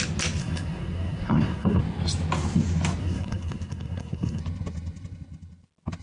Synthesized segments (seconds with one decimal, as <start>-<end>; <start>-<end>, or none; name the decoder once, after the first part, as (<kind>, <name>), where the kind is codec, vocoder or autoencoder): 0.4-1.8 (codec, SNAC); 3.0-4.4